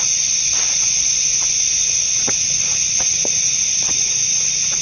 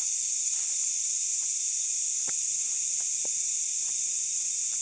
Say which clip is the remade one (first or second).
first